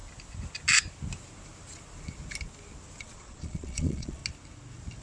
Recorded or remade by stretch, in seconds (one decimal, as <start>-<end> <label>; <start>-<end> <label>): 0.0-3.0 recorded; 3.0-4.2 remade; 4.2-5.0 recorded